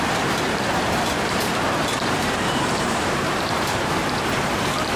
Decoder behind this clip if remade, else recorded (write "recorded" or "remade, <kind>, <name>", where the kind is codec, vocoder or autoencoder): remade, vocoder, BigVGAN v2